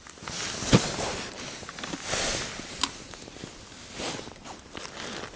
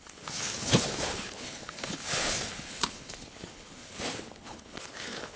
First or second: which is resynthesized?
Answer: second